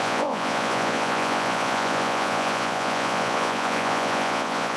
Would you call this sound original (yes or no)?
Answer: no